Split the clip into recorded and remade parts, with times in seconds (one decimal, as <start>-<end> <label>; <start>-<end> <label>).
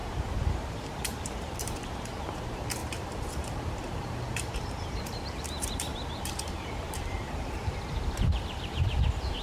0.0-9.4 remade